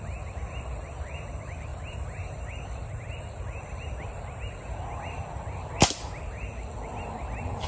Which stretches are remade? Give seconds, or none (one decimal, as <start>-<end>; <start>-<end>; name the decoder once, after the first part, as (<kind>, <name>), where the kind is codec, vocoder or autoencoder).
1.7-2.4 (vocoder, BigVGAN v2)